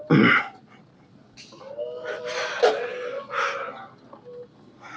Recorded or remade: recorded